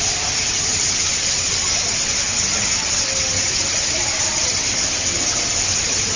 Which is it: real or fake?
real